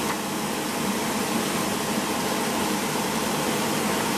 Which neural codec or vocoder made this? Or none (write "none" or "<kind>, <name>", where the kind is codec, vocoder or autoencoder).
none